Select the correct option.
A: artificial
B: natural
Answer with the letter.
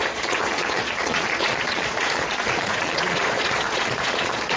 A